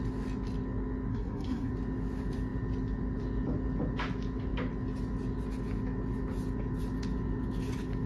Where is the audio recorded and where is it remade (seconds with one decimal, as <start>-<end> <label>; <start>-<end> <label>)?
0.0-1.1 recorded; 1.1-1.7 remade; 1.7-8.1 recorded